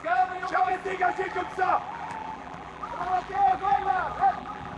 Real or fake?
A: fake